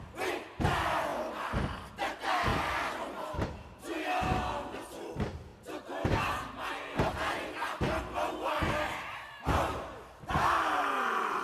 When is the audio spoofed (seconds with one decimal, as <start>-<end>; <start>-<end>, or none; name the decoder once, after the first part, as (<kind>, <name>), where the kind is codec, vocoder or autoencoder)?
none